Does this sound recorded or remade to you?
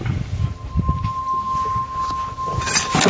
recorded